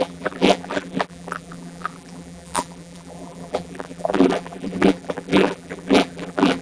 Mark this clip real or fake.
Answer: fake